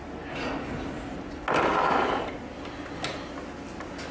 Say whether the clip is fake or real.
real